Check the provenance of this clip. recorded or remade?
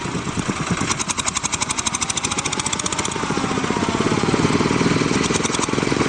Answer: remade